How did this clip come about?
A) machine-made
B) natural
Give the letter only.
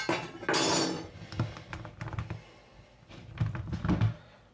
B